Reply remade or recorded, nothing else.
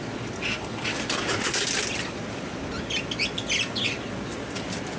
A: recorded